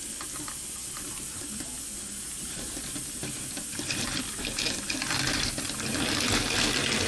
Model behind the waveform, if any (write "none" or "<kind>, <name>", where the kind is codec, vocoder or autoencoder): none